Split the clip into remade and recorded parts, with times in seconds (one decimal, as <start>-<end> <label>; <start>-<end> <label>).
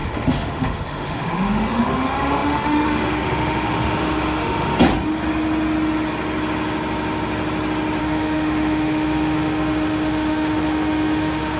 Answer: 0.0-4.7 remade; 4.7-8.0 recorded; 8.0-11.6 remade